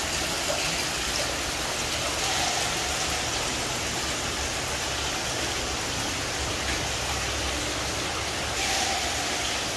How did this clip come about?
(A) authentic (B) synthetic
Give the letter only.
A